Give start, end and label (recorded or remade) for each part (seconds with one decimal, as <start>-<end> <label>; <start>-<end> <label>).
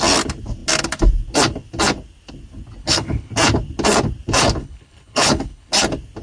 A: 0.0-2.8 recorded; 2.8-3.3 remade; 3.3-4.6 recorded; 4.6-5.7 remade; 5.7-6.2 recorded